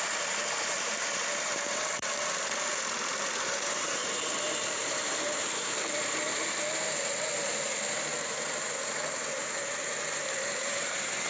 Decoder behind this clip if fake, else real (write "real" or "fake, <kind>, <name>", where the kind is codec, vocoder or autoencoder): fake, vocoder, BigVGAN v2